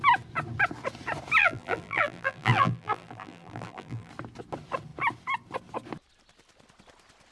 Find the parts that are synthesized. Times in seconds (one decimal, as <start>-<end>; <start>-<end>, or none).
1.4-4.1